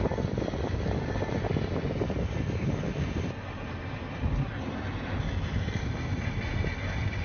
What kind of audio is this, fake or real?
real